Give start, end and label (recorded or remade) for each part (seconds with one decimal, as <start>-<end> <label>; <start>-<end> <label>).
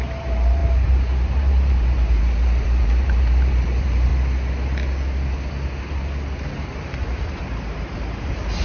0.0-4.1 remade; 4.1-7.2 recorded; 7.2-8.6 remade